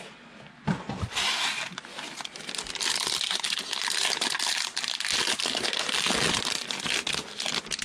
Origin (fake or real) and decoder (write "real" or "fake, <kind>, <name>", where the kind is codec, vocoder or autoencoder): real